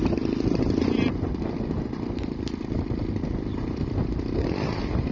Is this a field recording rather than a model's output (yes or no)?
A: yes